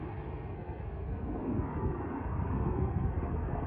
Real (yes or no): no